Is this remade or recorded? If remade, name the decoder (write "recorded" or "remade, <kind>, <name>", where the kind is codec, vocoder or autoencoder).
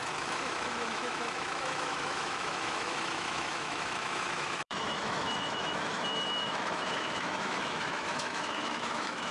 remade, autoencoder, DAC-VAE